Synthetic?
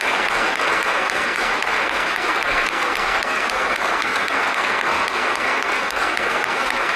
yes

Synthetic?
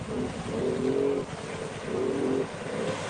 no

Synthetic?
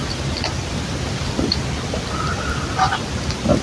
no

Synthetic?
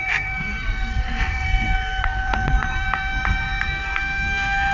yes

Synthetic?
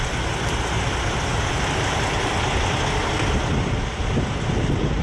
no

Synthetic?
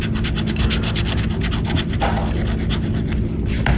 no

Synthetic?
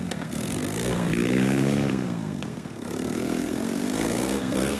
yes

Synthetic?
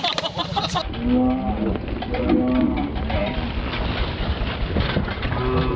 no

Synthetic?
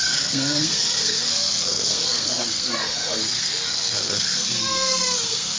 yes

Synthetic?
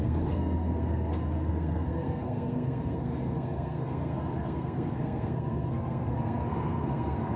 yes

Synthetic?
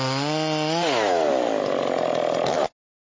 no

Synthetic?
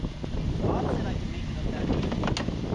no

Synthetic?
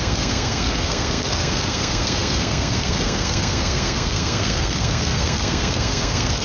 yes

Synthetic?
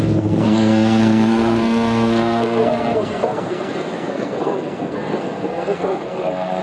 yes